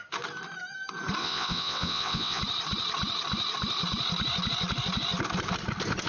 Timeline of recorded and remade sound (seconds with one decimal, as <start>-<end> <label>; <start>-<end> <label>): 0.0-1.2 recorded; 1.2-2.4 remade; 2.4-6.1 recorded